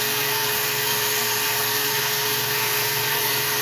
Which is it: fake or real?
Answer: fake